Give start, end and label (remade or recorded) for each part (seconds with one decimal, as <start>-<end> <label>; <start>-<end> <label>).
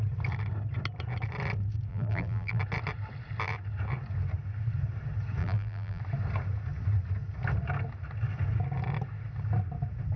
0.0-1.9 recorded; 1.9-2.6 remade; 2.6-5.4 recorded; 5.4-6.0 remade; 6.0-10.2 recorded